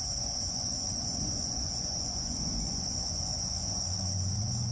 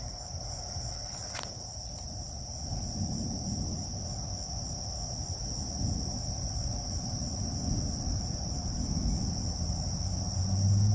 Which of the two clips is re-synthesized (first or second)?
first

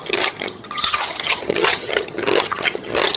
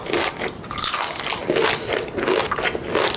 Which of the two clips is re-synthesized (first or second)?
first